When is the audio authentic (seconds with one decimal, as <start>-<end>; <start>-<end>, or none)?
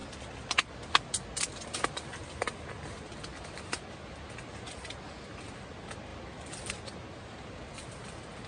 0.0-8.5